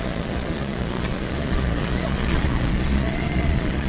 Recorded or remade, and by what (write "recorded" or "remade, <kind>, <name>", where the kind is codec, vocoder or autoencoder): remade, vocoder, Vocos